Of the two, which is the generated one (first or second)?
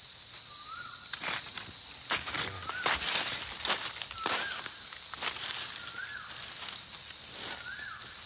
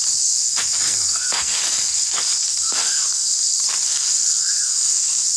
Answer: second